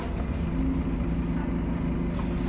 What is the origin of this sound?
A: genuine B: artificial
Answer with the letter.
A